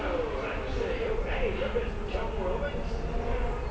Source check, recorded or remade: recorded